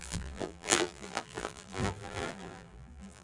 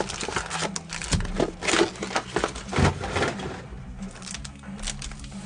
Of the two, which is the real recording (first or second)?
second